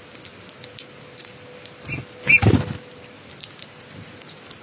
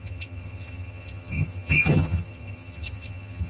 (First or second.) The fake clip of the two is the second